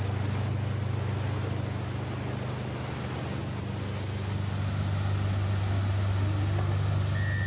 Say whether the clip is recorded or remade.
recorded